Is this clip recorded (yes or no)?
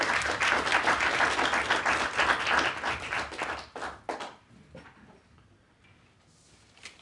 yes